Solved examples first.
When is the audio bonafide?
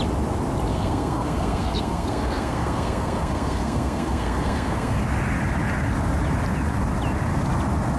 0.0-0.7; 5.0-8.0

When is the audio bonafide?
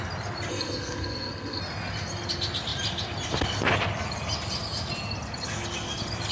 0.0-0.5; 1.6-6.3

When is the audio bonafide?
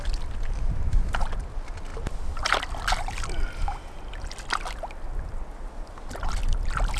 0.0-7.0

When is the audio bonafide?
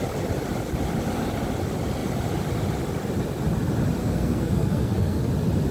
0.0-4.0; 5.3-5.7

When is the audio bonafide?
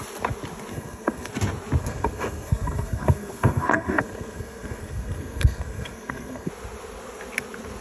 0.0-0.7; 1.3-1.8; 6.5-7.8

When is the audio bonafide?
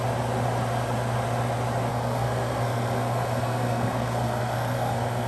0.0-1.9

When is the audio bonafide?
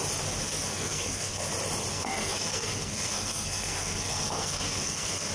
0.0-0.4; 1.5-1.9